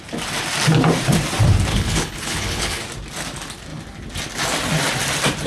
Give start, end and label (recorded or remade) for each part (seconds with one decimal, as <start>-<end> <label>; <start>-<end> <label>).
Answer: 0.0-1.7 recorded; 1.7-2.8 remade; 2.8-5.5 recorded